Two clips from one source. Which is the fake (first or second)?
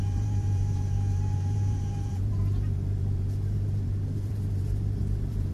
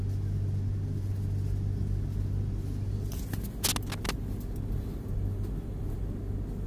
first